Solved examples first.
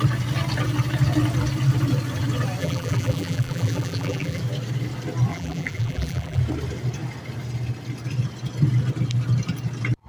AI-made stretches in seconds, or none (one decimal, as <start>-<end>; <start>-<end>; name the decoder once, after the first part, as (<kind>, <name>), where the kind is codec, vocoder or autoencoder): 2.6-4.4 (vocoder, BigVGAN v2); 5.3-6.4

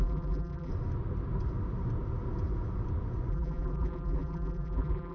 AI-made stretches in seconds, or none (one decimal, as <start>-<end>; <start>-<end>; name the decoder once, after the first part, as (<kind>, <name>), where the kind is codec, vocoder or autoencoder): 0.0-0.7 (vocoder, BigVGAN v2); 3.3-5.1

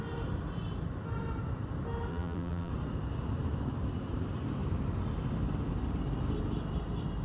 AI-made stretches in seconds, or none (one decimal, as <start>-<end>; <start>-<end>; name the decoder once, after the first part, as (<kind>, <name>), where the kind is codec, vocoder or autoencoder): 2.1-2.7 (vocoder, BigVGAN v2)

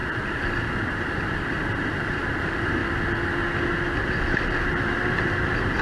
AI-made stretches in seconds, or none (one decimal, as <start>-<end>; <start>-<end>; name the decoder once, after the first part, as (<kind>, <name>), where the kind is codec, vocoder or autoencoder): 0.9-2.8 (vocoder, BigVGAN v2); 4.1-5.8

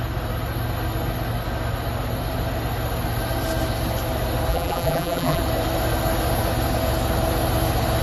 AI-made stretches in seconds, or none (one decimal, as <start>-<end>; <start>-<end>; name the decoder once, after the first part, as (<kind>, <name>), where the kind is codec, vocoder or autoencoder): 4.5-5.4 (vocoder, BigVGAN v2)

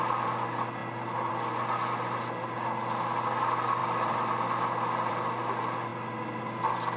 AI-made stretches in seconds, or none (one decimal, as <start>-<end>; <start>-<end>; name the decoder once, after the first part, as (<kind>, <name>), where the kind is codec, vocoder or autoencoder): none